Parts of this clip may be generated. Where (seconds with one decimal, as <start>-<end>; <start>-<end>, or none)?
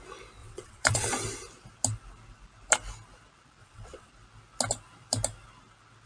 0.4-1.1; 3.6-4.1